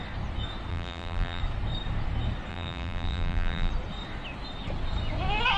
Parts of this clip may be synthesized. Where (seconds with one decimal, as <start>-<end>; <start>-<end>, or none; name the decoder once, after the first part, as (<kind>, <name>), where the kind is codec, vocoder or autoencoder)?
0.7-1.4 (vocoder, BigVGAN v2); 2.5-3.7